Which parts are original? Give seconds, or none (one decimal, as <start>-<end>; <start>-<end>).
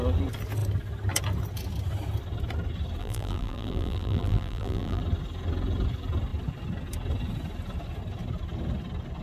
0.0-3.0; 5.0-9.2